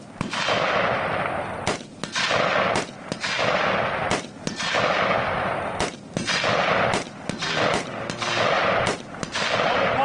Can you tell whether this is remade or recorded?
recorded